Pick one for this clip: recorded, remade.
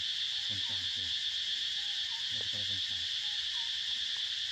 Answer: remade